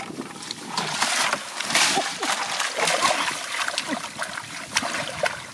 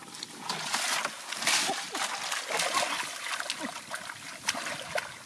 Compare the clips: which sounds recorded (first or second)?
second